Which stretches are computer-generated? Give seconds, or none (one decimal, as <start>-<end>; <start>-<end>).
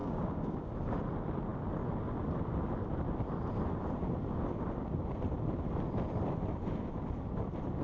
0.0-0.7